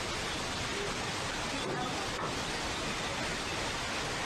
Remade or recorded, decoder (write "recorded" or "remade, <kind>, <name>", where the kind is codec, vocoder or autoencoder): recorded